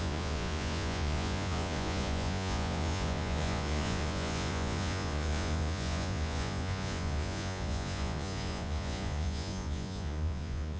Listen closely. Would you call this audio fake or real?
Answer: fake